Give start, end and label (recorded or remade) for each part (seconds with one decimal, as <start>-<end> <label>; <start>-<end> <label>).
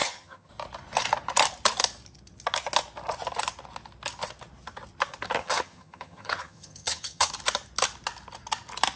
0.0-0.5 remade; 0.5-5.4 recorded; 5.4-7.3 remade; 7.3-9.0 recorded